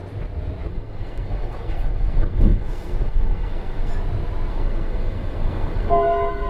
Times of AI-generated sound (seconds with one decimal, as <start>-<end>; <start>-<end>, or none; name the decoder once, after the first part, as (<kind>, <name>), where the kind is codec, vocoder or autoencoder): 0.7-3.9 (codec, SNAC); 4.5-6.5